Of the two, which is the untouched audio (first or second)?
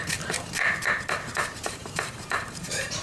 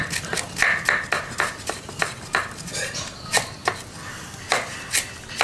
second